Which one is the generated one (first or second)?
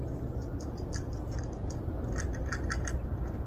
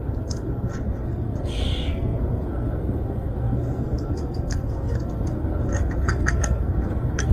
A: second